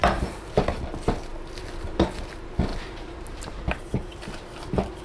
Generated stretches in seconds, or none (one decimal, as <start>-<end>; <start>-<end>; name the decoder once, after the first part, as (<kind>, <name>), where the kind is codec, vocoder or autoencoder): 2.7-5.0 (vocoder, BigVGAN v2)